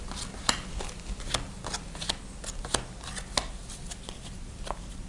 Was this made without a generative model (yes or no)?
yes